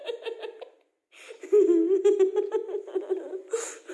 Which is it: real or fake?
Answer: real